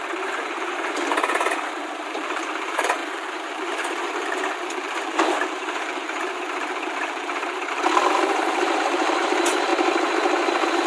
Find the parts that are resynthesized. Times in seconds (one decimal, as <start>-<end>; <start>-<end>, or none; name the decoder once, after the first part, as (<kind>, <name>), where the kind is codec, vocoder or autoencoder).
0.0-9.7 (vocoder, BigVGAN v2)